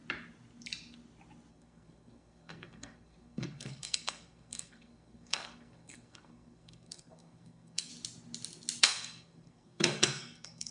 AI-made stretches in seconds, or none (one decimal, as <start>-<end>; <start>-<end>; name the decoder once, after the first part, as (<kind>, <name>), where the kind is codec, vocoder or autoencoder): 1.5-7.9 (codec, SNAC); 8.8-10.7